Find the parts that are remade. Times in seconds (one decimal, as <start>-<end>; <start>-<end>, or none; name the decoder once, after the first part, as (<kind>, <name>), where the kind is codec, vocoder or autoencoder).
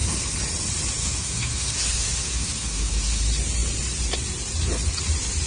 1.0-3.2 (autoencoder, DAC-VAE)